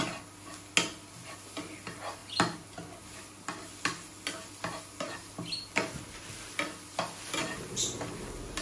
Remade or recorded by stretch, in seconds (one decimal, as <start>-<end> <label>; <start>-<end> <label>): 0.0-8.6 recorded